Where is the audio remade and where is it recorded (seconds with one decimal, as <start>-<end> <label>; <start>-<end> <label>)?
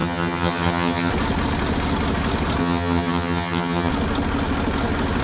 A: 0.0-1.1 remade; 1.1-2.6 recorded; 2.6-3.9 remade; 3.9-5.2 recorded